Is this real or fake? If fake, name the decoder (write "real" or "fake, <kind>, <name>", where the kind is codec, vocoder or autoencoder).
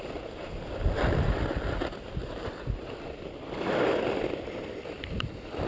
real